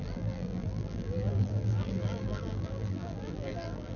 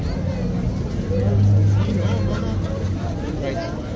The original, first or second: second